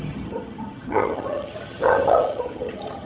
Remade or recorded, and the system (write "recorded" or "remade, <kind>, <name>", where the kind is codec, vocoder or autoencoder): remade, vocoder, HiFi-GAN